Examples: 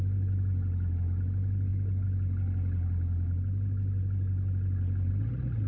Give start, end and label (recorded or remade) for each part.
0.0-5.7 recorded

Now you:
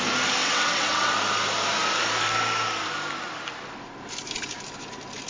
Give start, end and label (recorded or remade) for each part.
0.0-0.4 recorded; 0.4-1.1 remade; 1.1-5.3 recorded

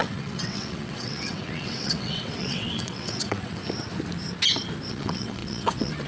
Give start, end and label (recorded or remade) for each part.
0.0-3.6 remade; 3.6-4.9 recorded; 4.9-6.1 remade

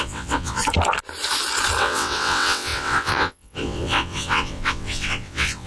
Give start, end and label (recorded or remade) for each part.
0.0-0.6 remade; 0.6-1.8 recorded; 1.8-5.7 remade

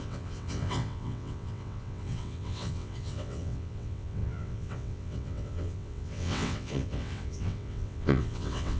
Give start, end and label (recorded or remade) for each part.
0.0-8.8 remade